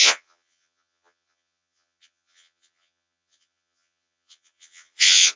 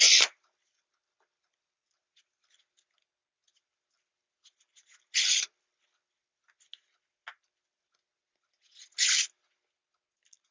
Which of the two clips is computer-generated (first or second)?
first